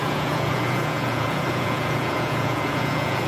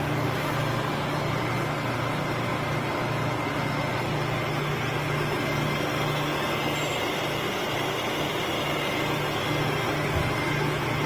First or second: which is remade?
first